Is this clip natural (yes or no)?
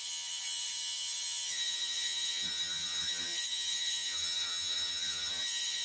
no